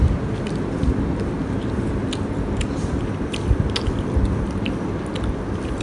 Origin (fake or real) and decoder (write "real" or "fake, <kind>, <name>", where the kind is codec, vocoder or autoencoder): real